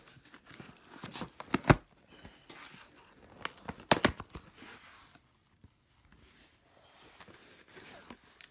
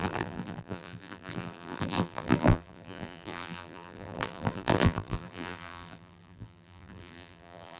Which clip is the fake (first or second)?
second